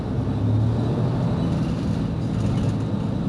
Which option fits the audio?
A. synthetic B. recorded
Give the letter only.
B